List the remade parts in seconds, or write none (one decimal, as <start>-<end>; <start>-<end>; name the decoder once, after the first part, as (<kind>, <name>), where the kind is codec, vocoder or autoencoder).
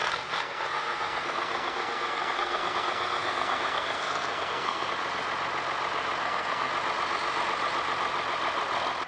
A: 0.0-4.9 (codec, SNAC); 6.2-6.7